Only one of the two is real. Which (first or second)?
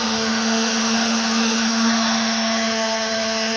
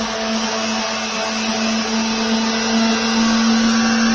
second